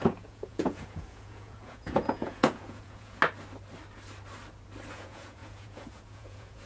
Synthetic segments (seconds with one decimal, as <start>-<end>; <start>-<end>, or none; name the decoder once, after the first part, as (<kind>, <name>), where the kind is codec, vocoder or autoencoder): 0.0-3.2 (vocoder, Vocos); 4.9-6.7